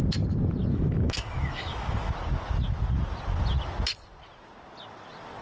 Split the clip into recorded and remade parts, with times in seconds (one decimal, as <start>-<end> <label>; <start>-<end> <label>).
0.0-0.7 recorded; 0.7-2.1 remade; 2.1-5.4 recorded